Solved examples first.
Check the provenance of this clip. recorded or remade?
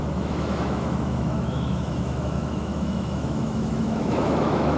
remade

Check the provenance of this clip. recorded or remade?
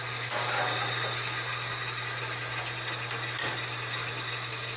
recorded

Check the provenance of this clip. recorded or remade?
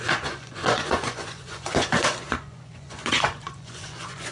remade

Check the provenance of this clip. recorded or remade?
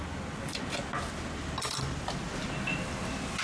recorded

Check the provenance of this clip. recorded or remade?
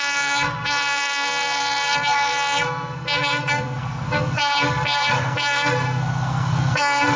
remade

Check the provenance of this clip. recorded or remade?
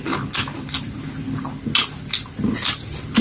recorded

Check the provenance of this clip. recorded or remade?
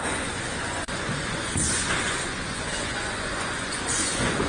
remade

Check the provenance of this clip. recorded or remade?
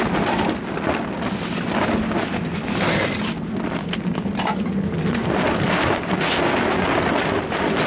recorded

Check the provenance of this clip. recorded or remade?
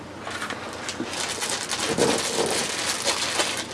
recorded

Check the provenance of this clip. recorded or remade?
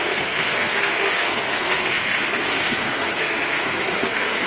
remade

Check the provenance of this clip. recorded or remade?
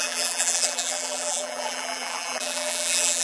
remade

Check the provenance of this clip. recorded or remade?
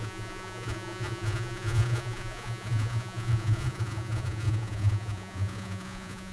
remade